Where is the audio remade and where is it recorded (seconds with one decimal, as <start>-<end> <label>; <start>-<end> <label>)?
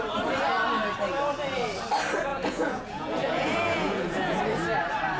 0.0-2.3 recorded; 2.3-4.4 remade; 4.4-5.2 recorded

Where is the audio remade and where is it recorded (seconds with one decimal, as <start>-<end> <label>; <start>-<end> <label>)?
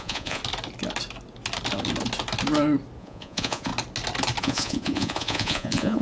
0.0-0.4 remade; 0.4-3.0 recorded; 3.0-3.7 remade; 3.7-4.4 recorded; 4.4-6.0 remade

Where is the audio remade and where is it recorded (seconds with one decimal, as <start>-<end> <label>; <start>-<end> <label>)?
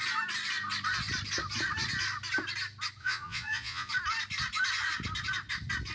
0.0-3.0 recorded; 3.0-3.9 remade; 3.9-5.9 recorded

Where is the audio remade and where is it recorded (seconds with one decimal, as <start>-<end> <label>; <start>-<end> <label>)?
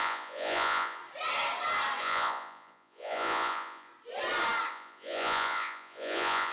0.0-1.0 remade; 1.0-2.0 recorded; 2.0-3.9 remade; 3.9-4.7 recorded; 4.7-6.5 remade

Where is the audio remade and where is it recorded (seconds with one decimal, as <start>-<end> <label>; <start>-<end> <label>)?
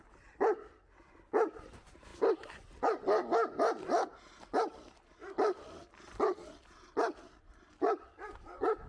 0.0-8.9 recorded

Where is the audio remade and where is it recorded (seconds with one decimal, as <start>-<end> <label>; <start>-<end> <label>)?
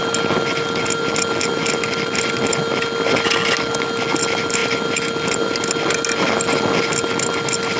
0.0-7.8 recorded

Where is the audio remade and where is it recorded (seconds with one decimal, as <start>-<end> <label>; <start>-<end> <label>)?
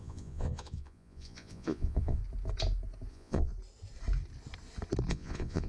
0.0-2.2 remade; 2.2-3.1 recorded; 3.1-3.5 remade; 3.5-5.1 recorded; 5.1-5.7 remade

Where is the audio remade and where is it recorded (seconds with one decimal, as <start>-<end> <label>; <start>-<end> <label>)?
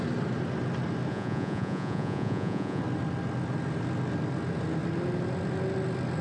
0.0-1.1 recorded; 1.1-2.8 remade; 2.8-6.2 recorded